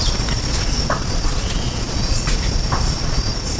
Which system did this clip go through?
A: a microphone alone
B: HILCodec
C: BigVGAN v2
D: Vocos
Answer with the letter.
D